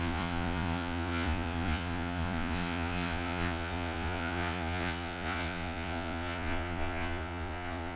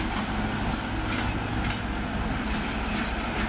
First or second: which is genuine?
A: second